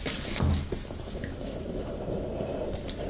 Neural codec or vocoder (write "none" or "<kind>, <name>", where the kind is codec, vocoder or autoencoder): none